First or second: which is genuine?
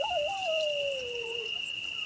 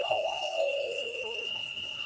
first